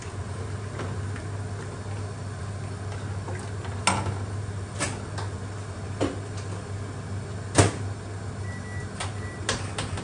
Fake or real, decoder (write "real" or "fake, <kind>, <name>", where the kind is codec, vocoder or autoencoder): real